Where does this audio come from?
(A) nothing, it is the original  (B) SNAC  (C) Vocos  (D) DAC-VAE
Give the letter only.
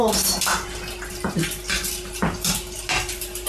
A